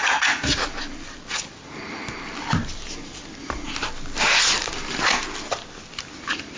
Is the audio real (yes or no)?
yes